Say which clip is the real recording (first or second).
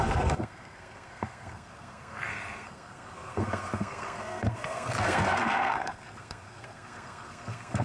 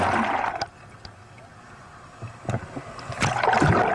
second